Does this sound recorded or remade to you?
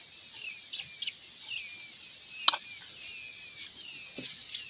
recorded